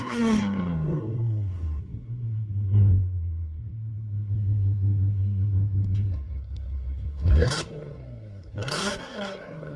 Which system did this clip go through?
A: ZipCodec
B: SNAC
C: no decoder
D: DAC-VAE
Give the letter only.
B